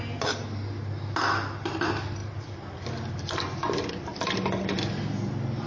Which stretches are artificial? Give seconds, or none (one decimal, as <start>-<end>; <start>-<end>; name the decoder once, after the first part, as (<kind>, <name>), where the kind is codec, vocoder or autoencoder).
none